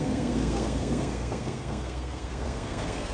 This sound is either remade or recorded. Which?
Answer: remade